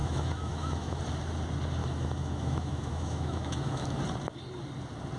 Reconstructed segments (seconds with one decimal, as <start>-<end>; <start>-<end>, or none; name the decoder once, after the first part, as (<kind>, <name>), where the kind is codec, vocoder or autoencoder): 0.0-1.0 (autoencoder, DAC-VAE); 1.8-4.0